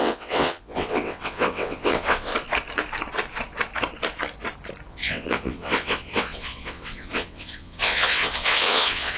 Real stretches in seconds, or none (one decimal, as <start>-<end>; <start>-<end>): 2.3-4.9